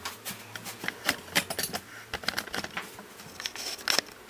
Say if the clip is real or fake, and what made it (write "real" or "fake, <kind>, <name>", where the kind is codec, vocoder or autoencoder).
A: real